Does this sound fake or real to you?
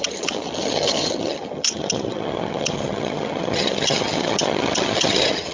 fake